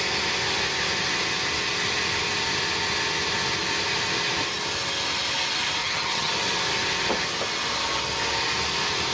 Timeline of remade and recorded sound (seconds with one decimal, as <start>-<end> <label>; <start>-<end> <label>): 0.0-5.8 recorded; 5.8-6.3 remade; 6.3-9.1 recorded